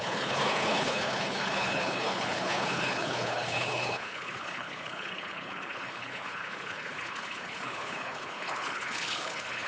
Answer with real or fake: fake